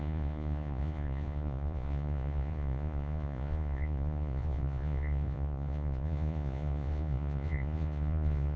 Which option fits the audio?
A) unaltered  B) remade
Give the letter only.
B